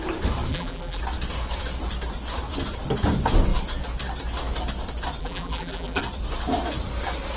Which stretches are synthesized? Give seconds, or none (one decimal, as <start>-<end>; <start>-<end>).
0.5-1.0; 5.2-6.0